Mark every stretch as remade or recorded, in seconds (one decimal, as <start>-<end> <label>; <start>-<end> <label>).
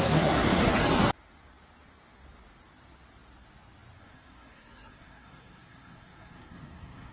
0.0-0.7 remade; 0.7-4.0 recorded; 4.0-7.1 remade